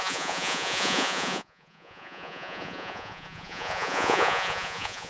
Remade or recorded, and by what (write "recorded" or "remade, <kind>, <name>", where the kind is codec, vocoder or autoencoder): remade, vocoder, Vocos